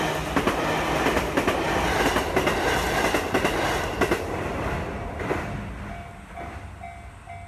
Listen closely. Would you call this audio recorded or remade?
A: recorded